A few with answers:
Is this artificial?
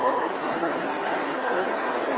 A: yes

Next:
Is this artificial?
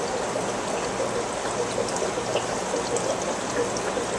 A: no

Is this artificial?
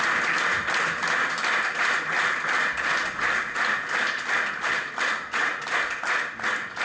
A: no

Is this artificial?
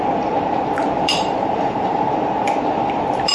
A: yes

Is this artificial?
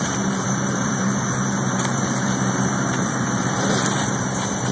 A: yes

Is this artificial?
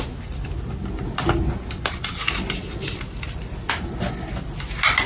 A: no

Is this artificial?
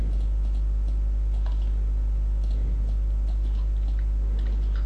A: no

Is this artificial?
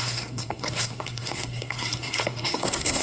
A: yes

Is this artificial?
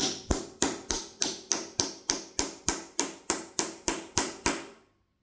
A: no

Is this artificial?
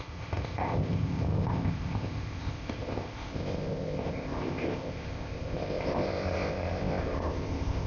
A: yes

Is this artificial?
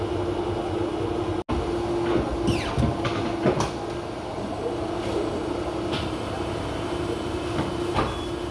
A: no